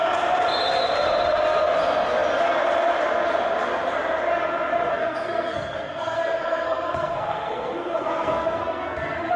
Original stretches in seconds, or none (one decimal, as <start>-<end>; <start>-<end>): 0.0-4.9